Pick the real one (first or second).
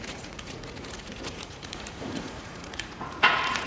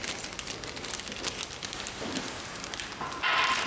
second